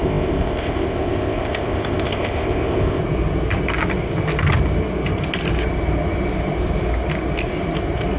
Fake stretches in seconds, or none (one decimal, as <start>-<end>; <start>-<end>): 0.0-3.0